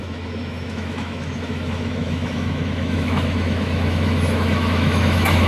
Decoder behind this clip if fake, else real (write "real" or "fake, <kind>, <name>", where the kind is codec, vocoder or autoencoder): fake, autoencoder, DAC-VAE